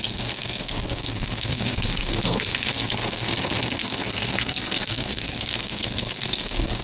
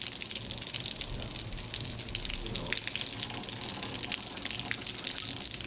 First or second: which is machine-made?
first